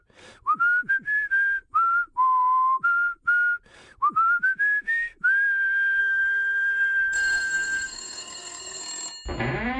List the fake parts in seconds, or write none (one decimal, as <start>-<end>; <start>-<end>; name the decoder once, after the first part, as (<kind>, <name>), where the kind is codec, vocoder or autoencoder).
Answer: 6.0-8.8 (codec, SNAC)